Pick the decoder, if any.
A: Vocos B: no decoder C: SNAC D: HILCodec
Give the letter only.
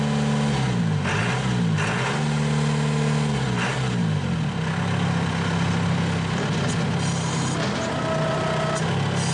B